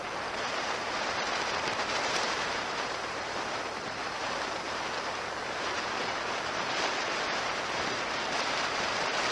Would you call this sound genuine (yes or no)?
no